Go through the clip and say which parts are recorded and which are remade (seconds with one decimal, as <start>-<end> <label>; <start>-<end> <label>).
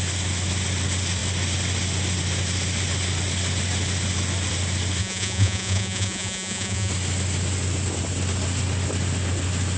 0.0-5.0 recorded; 5.0-6.9 remade; 6.9-9.8 recorded